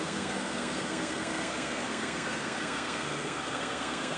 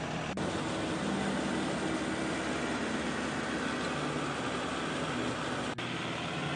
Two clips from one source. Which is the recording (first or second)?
second